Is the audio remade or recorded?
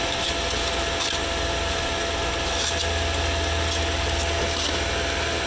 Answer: recorded